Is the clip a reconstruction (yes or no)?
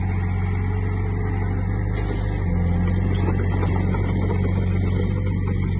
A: no